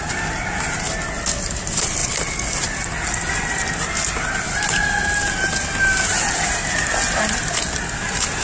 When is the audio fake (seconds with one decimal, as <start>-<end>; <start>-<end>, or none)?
none